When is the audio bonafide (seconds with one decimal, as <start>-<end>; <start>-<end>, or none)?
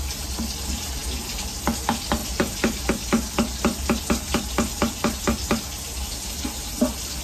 0.0-7.2